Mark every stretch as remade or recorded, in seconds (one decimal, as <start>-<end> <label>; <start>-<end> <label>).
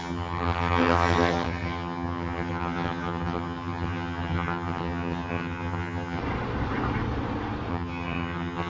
0.0-6.2 remade; 6.2-7.7 recorded; 7.7-8.7 remade